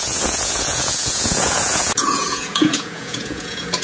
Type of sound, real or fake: fake